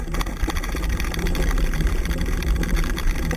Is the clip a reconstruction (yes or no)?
yes